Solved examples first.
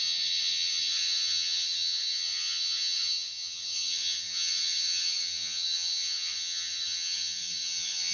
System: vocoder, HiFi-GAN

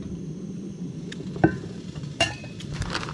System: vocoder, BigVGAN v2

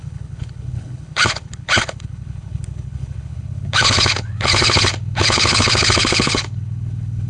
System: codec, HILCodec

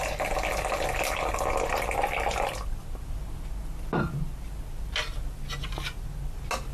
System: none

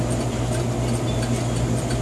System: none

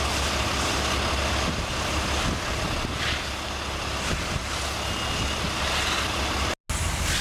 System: none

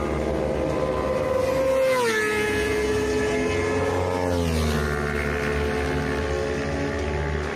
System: none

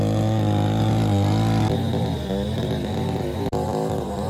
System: none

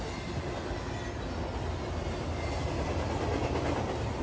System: none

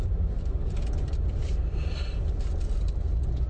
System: vocoder, BigVGAN v2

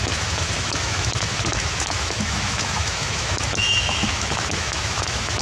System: autoencoder, DAC-VAE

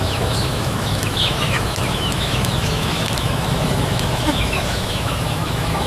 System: autoencoder, DAC-VAE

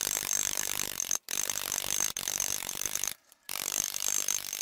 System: vocoder, BigVGAN v2